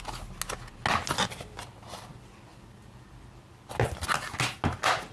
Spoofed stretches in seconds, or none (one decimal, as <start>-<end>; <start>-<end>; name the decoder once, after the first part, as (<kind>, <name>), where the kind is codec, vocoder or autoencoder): none